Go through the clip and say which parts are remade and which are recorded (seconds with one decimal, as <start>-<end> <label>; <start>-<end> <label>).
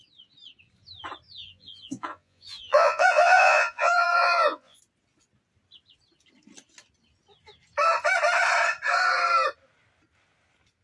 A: 0.0-1.4 recorded; 1.4-4.8 remade; 4.8-10.8 recorded